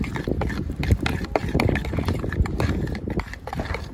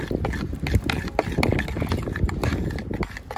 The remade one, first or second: first